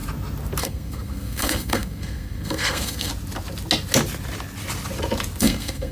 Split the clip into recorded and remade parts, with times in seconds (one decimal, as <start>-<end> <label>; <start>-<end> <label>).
0.0-0.6 recorded; 0.6-3.1 remade; 3.1-5.4 recorded; 5.4-5.9 remade